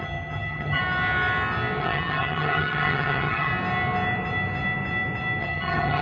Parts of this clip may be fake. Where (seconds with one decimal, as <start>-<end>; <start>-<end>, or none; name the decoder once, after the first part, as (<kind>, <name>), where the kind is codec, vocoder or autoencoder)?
0.0-0.8 (vocoder, HiFi-GAN); 1.8-3.5; 5.4-6.0